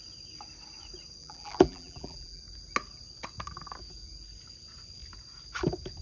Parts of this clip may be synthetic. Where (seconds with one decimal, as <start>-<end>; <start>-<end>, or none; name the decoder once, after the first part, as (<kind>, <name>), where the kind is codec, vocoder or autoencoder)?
1.2-2.4 (vocoder, BigVGAN v2)